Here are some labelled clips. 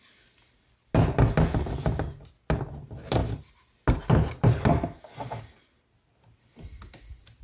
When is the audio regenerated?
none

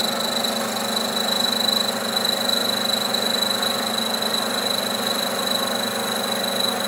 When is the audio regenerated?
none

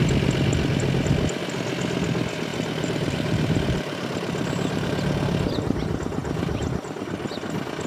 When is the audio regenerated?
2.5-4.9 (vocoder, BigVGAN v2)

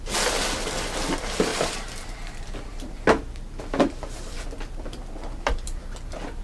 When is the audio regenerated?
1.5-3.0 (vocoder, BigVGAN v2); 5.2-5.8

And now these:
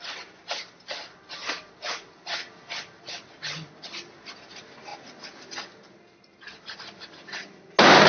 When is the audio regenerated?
none